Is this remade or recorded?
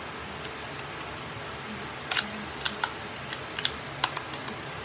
recorded